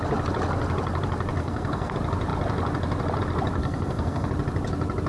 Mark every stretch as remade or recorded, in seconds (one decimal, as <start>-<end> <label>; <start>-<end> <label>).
0.0-1.4 recorded; 1.4-1.9 remade; 1.9-3.6 recorded; 3.6-4.3 remade; 4.3-5.1 recorded